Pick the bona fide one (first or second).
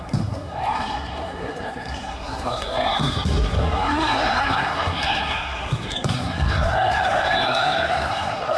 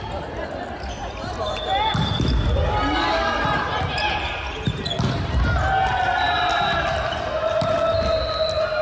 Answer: second